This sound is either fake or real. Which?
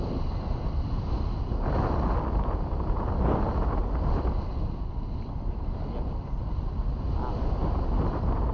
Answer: real